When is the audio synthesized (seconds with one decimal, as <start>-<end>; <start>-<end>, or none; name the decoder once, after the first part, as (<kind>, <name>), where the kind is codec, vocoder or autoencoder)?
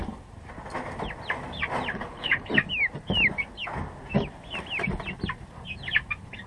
1.9-2.5 (codec, HILCodec)